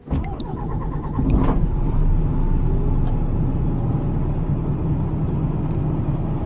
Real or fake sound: real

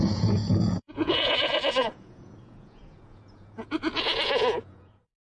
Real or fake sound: fake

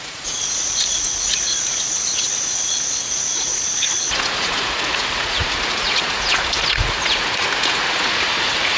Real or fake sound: fake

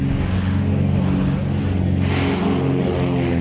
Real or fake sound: real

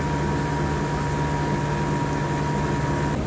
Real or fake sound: real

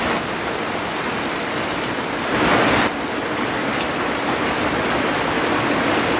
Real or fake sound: real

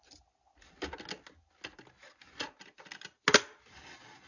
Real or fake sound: real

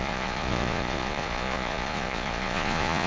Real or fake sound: fake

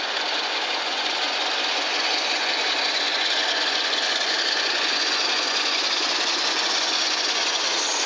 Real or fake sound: fake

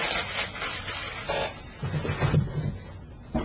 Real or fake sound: real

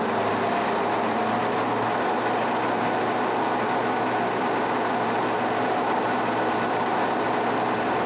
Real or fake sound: real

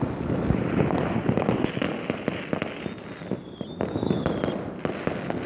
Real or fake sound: real